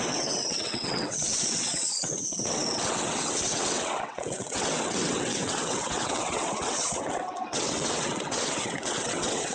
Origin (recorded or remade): remade